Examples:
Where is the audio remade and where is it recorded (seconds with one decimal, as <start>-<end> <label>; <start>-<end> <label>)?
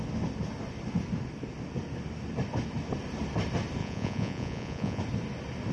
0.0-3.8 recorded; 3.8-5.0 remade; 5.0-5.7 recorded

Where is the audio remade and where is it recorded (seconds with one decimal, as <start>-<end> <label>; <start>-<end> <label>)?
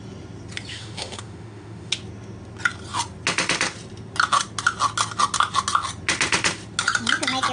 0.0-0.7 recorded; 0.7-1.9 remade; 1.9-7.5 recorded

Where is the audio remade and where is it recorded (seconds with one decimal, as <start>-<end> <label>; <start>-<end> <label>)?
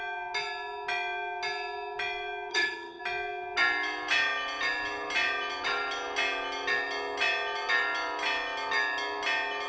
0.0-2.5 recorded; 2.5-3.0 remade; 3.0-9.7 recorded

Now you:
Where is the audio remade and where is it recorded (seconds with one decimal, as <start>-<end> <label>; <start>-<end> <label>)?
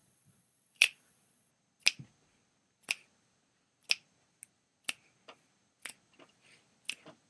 0.0-1.5 remade; 1.5-7.3 recorded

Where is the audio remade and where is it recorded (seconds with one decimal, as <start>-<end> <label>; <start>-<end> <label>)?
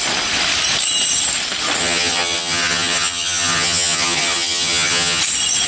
0.0-1.8 recorded; 1.8-5.2 remade; 5.2-5.7 recorded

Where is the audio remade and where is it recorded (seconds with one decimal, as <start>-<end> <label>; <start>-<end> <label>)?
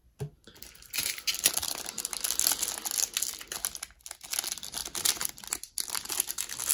0.0-2.0 remade; 2.0-4.8 recorded; 4.8-6.0 remade; 6.0-6.7 recorded